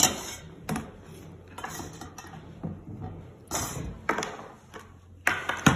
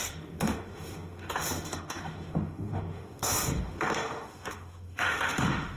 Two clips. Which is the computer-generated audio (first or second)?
second